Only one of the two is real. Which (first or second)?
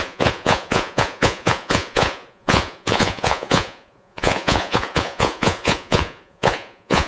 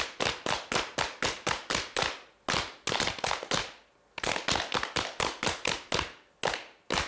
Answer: second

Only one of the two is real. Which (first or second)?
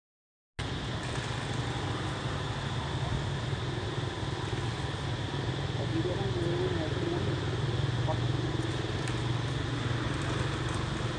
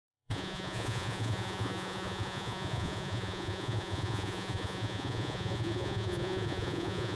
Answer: first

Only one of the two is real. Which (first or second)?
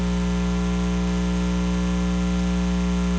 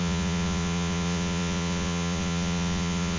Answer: first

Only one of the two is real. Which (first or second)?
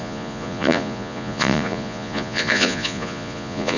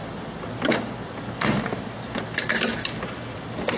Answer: second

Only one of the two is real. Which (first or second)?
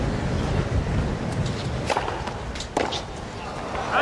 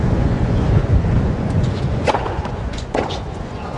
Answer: first